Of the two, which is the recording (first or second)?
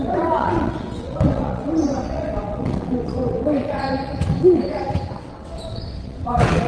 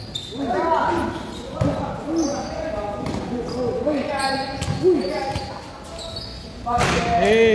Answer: second